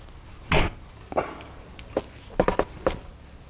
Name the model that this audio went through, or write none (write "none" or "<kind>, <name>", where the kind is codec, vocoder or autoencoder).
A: none